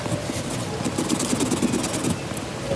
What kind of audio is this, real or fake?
real